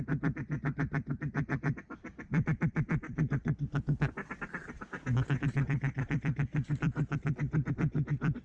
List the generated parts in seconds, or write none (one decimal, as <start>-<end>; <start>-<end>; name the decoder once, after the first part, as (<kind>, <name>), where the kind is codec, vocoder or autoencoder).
none